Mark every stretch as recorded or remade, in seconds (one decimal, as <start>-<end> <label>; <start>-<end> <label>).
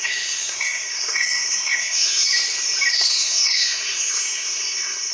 0.0-2.3 remade; 2.3-2.9 recorded; 2.9-5.1 remade